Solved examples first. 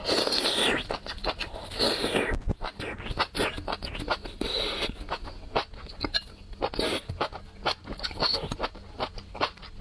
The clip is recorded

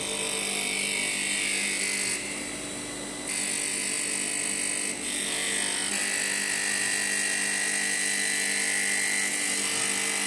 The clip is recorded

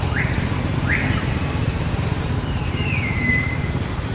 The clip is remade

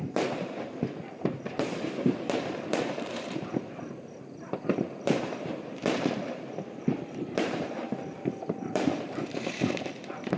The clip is remade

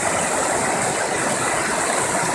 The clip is recorded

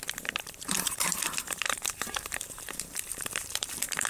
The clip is remade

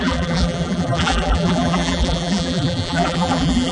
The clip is remade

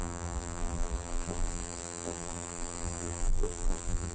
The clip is remade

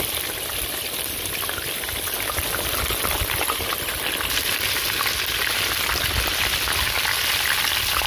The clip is recorded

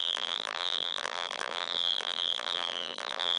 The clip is remade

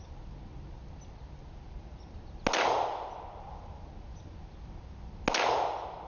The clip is recorded